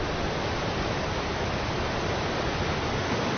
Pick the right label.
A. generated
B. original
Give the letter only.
B